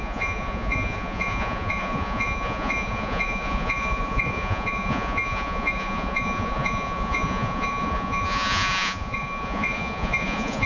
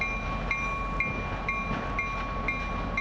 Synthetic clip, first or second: first